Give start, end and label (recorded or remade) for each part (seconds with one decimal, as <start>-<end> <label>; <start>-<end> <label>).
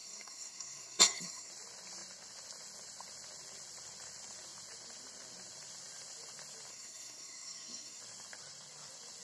0.0-1.5 remade; 1.5-6.7 recorded; 6.7-8.0 remade; 8.0-9.2 recorded